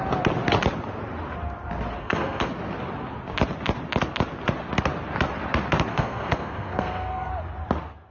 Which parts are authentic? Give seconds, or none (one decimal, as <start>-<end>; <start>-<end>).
0.0-2.0; 2.5-5.9; 7.3-8.1